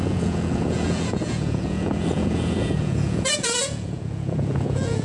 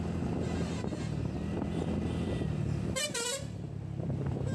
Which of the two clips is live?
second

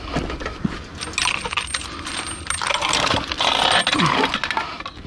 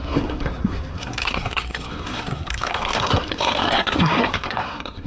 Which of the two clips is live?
first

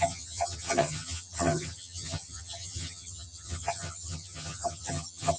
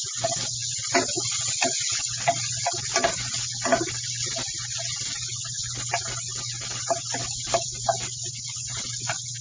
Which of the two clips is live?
second